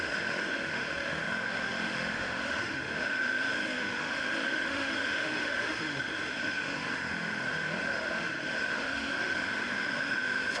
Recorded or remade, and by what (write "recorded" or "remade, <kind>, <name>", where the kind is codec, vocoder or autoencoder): remade, autoencoder, DAC-VAE